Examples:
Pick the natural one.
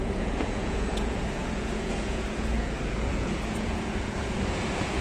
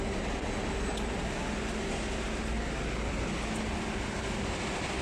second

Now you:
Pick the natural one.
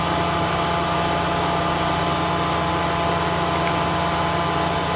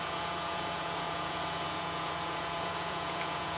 first